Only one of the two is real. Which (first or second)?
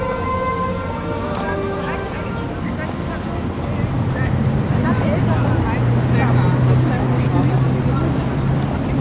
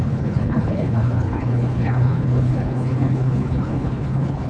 first